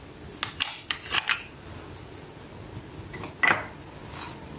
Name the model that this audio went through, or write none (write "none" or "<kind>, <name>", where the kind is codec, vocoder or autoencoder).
none